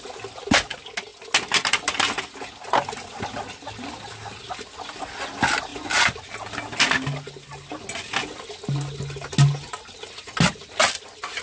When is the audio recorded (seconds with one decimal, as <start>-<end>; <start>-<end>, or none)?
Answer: 0.0-11.4

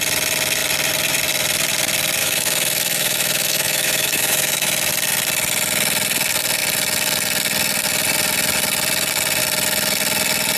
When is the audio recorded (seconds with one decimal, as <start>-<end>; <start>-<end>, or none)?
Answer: 0.0-2.2; 4.9-10.6

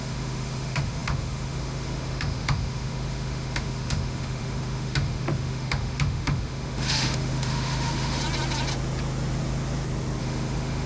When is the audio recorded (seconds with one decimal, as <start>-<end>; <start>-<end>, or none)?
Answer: 8.2-10.2

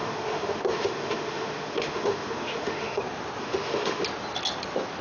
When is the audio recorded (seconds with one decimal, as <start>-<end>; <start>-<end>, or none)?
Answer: 3.0-3.4; 4.0-5.0